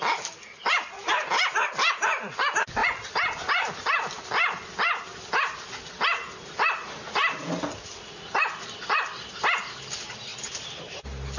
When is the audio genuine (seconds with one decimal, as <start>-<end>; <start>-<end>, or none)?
0.0-11.4